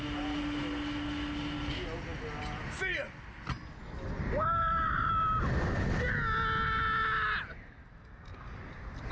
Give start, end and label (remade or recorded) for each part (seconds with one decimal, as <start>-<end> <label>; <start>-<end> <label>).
0.0-9.1 recorded